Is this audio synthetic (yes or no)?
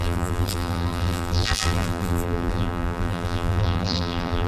yes